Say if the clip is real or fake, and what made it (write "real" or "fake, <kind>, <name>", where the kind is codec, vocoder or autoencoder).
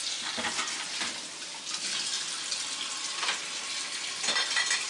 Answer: real